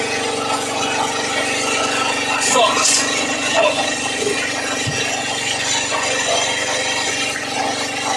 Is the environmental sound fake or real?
fake